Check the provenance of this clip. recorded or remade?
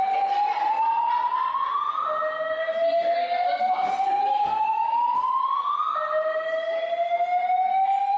recorded